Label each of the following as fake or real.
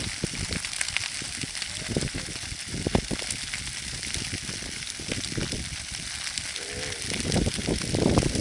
real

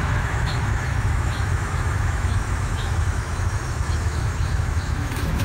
fake